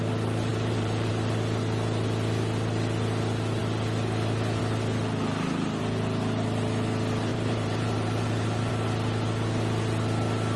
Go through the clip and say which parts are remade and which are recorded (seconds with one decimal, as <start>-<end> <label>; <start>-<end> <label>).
0.0-0.5 recorded; 0.5-1.1 remade; 1.1-7.3 recorded; 7.3-8.7 remade; 8.7-10.6 recorded

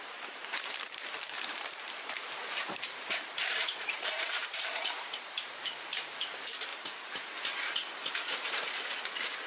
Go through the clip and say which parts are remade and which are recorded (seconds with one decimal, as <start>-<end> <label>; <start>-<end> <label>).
0.0-6.7 remade; 6.7-8.1 recorded; 8.1-9.5 remade

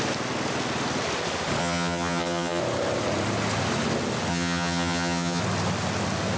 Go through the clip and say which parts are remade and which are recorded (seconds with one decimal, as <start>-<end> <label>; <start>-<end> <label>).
0.0-1.6 recorded; 1.6-2.6 remade; 2.6-4.3 recorded; 4.3-5.4 remade; 5.4-6.4 recorded

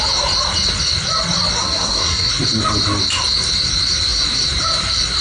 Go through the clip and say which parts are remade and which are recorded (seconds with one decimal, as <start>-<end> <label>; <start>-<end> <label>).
0.0-1.6 recorded; 1.6-2.3 remade; 2.3-5.2 recorded

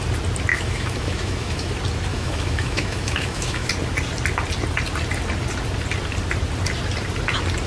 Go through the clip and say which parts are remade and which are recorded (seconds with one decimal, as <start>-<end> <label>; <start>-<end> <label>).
0.0-0.5 recorded; 0.5-1.7 remade; 1.7-2.1 recorded; 2.1-3.7 remade; 3.7-7.7 recorded

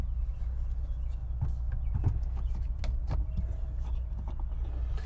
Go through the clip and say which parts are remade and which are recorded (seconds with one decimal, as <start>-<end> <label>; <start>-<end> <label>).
0.0-5.1 recorded

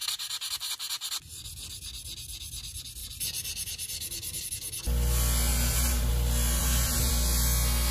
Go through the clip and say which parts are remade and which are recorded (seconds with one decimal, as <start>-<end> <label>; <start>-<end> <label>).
0.0-3.0 recorded; 3.0-4.4 remade; 4.4-5.5 recorded; 5.5-6.1 remade; 6.1-6.6 recorded; 6.6-7.1 remade; 7.1-7.9 recorded

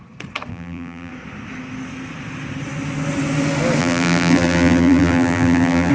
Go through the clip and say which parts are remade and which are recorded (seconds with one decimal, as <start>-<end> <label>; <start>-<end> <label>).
0.0-0.5 recorded; 0.5-1.1 remade; 1.1-3.8 recorded; 3.8-5.9 remade